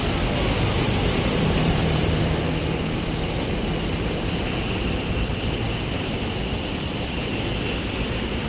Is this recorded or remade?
recorded